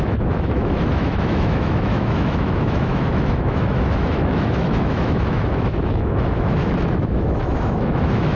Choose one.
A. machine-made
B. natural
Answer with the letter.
A